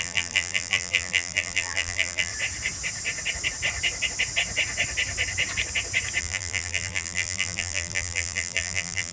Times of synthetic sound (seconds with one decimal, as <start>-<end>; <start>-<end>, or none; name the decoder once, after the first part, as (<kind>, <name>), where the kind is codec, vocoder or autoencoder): 0.0-2.3 (vocoder, BigVGAN v2); 6.2-9.1